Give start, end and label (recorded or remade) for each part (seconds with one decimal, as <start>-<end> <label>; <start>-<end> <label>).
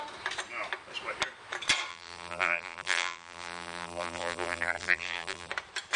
0.0-1.9 recorded; 1.9-5.5 remade; 5.5-6.0 recorded